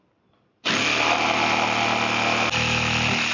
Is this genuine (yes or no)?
yes